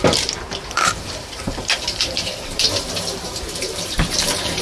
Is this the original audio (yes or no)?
no